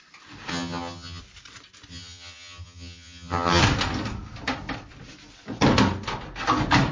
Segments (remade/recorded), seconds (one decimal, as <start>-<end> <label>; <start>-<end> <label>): 0.0-0.5 recorded; 0.5-1.2 remade; 1.2-1.9 recorded; 1.9-3.6 remade; 3.6-6.9 recorded